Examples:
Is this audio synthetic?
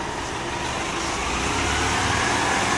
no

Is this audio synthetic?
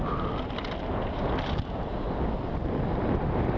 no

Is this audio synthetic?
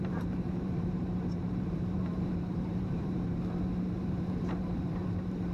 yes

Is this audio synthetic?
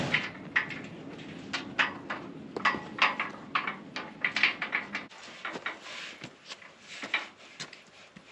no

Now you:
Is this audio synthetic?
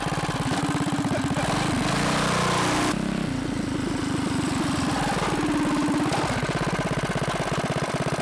no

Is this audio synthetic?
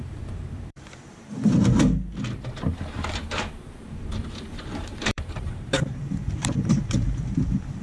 yes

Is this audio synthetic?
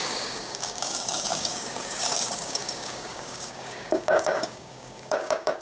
yes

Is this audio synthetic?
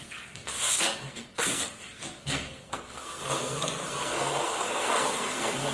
yes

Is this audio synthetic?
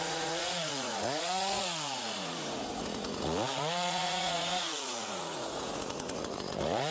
yes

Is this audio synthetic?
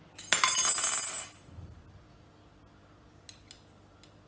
no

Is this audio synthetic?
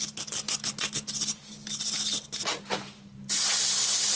no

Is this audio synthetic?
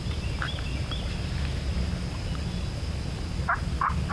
no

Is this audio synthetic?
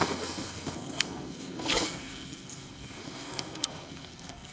yes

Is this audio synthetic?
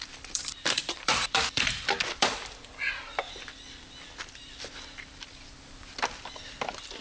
yes